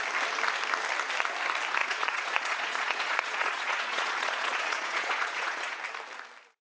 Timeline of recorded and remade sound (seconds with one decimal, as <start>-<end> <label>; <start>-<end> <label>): 0.0-1.8 recorded; 1.8-5.8 remade; 5.8-6.6 recorded